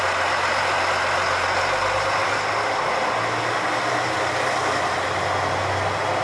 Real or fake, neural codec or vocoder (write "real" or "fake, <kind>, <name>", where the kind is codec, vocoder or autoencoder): real